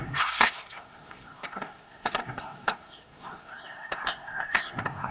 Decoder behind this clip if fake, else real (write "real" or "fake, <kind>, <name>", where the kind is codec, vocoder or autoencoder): fake, codec, SNAC